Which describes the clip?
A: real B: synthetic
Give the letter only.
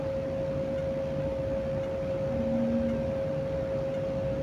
B